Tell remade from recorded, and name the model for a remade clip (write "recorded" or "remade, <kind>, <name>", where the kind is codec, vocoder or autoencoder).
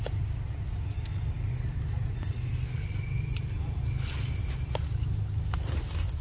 recorded